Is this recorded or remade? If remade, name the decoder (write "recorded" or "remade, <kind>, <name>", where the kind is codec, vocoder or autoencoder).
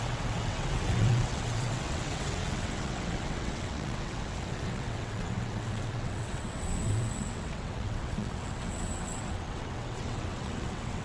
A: remade, vocoder, WaveNeXt